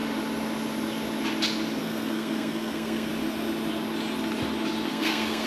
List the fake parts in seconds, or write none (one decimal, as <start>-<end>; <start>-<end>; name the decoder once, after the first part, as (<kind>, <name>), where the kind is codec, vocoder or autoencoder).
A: 1.8-3.1 (codec, SNAC); 4.9-5.5